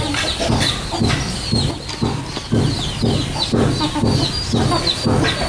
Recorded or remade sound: recorded